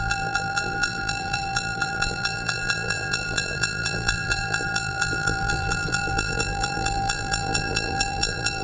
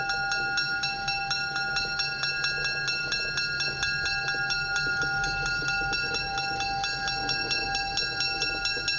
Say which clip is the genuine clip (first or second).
second